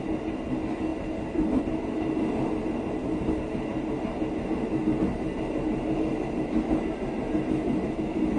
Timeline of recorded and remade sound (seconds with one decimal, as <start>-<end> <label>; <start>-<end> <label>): 0.0-8.4 recorded